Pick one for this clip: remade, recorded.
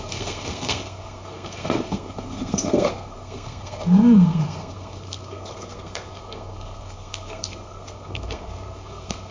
remade